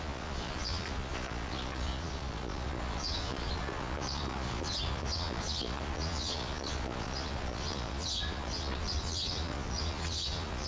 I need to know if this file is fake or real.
fake